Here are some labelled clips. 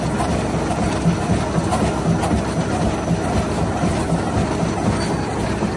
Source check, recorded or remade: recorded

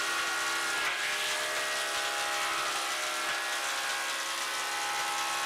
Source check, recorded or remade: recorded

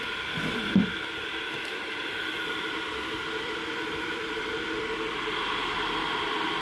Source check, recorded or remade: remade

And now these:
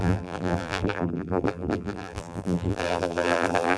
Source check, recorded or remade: remade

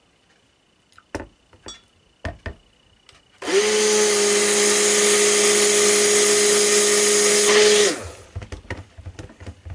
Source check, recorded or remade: recorded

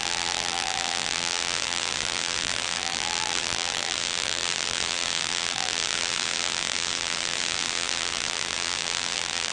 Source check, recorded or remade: remade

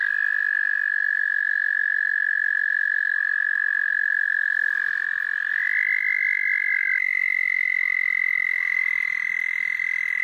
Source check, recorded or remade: remade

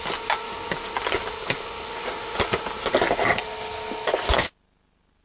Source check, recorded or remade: recorded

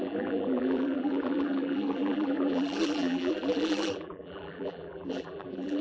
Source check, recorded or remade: remade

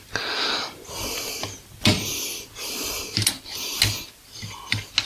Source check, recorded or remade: recorded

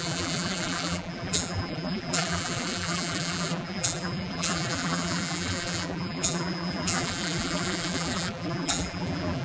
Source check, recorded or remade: remade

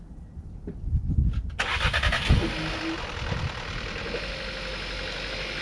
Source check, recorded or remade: recorded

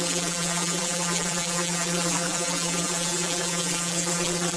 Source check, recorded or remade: remade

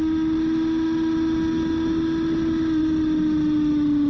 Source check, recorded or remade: recorded